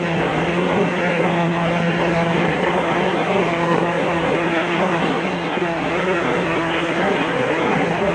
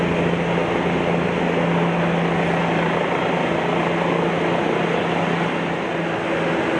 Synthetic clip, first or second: first